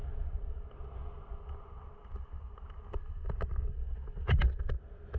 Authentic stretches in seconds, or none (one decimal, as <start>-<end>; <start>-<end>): 0.0-5.2